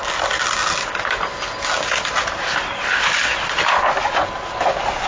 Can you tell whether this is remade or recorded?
recorded